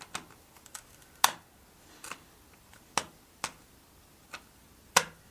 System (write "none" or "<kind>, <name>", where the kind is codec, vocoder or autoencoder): none